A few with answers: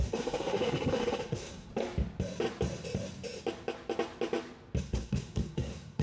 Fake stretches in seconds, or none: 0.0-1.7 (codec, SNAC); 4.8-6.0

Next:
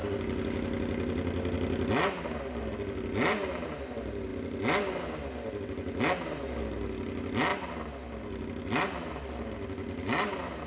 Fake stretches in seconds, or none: none

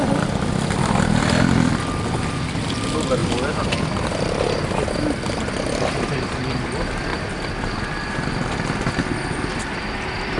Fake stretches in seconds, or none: 7.1-7.9 (vocoder, BigVGAN v2)

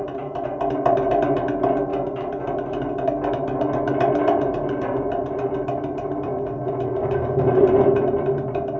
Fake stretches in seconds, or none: 7.0-7.6 (codec, DAC)

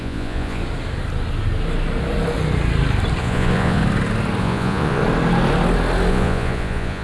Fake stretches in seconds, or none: 0.0-0.6 (vocoder, Vocos); 3.2-3.8; 4.4-5.0; 6.1-7.0

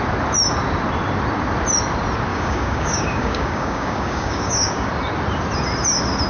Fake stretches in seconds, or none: 2.3-4.9 (codec, DAC)

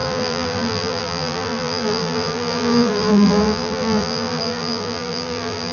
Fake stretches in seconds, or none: 0.0-5.7 (vocoder, BigVGAN v2)

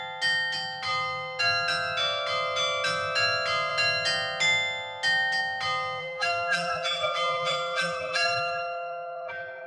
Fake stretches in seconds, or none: 6.0-9.7 (vocoder, BigVGAN v2)